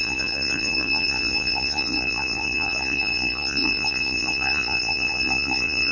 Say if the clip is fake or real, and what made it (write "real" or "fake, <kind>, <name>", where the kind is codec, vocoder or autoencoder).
fake, vocoder, Vocos